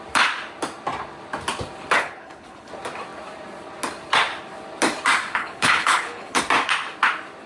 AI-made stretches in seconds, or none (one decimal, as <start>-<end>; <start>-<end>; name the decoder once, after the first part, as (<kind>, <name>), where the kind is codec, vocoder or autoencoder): 2.0-2.7 (codec, HILCodec); 5.4-6.4